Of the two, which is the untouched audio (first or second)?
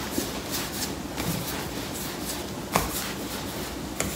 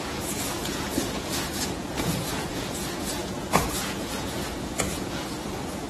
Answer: first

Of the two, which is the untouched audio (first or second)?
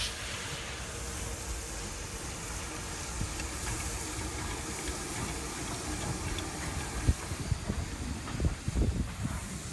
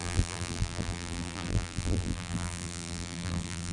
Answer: first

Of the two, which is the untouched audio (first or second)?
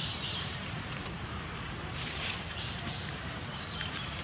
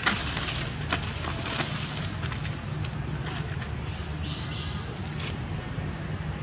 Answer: second